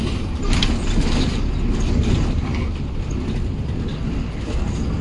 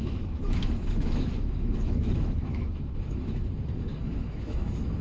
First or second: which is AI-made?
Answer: second